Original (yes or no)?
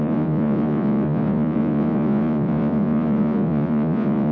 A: no